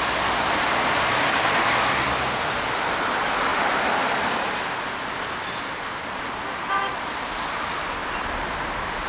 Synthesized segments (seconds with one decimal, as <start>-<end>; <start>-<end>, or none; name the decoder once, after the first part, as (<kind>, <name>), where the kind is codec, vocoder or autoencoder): none